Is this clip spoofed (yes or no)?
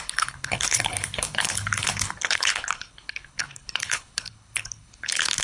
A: yes